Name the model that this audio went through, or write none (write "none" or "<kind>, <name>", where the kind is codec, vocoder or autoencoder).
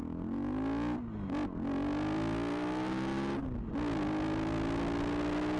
none